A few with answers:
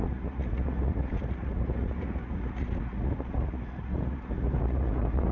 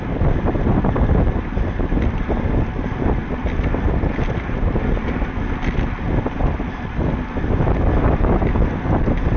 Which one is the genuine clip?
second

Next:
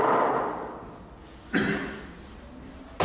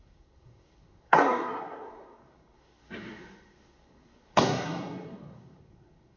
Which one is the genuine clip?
first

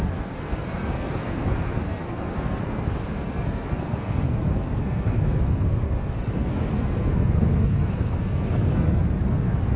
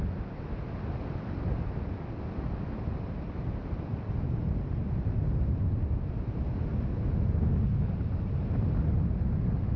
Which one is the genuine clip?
second